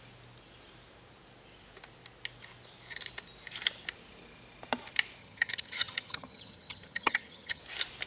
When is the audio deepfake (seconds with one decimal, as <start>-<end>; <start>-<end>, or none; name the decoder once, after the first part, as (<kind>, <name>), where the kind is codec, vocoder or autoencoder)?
5.2-7.6 (vocoder, HiFi-GAN)